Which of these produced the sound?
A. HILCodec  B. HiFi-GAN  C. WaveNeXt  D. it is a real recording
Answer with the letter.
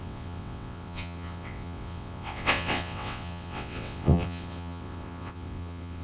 C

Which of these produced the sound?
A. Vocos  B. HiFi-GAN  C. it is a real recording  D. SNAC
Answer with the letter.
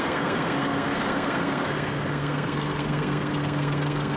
D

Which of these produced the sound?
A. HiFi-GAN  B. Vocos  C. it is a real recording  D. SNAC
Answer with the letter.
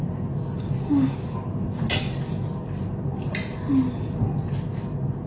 C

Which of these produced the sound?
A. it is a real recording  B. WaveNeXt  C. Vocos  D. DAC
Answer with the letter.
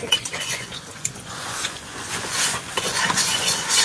C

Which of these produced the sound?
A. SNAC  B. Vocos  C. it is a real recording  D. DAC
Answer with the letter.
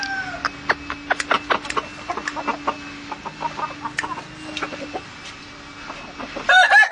C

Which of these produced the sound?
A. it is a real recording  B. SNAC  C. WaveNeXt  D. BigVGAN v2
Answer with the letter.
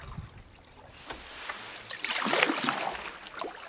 A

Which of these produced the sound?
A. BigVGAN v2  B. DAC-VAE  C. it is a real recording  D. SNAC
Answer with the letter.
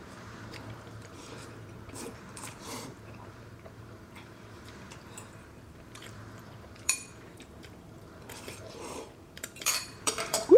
A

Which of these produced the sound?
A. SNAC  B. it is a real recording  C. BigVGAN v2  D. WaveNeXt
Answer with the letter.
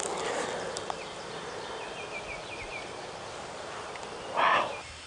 B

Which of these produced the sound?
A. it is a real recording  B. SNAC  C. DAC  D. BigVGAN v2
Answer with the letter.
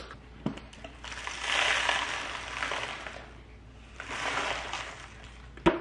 A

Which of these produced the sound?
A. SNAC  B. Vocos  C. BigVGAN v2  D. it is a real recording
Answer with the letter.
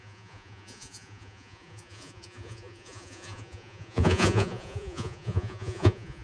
B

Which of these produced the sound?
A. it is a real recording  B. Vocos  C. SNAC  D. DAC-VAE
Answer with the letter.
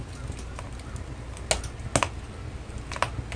A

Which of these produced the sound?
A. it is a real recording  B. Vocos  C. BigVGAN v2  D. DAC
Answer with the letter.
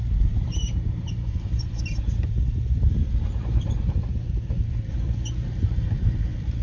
C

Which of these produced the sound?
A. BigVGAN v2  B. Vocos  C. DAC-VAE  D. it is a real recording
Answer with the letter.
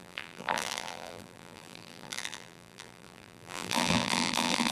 A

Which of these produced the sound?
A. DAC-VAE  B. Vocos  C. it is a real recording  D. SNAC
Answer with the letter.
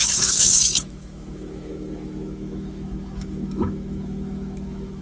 A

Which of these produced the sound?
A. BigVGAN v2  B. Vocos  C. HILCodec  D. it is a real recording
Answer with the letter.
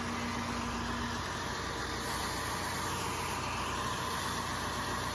D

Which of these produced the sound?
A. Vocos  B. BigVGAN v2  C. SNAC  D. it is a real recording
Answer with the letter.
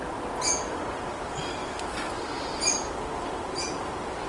D